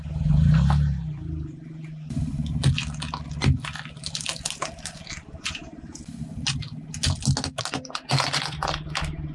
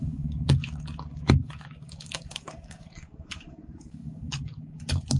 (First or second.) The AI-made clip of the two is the second